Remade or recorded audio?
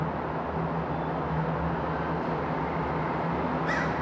recorded